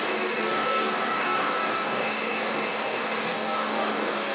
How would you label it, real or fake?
fake